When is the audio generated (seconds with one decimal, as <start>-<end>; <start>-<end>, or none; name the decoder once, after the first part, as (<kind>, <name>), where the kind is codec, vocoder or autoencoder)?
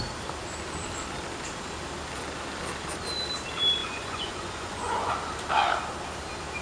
3.8-5.1 (vocoder, Vocos)